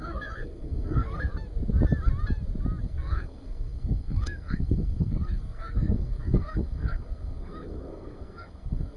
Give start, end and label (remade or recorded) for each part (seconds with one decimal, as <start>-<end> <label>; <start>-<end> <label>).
0.0-1.3 remade; 1.3-2.8 recorded; 2.8-9.0 remade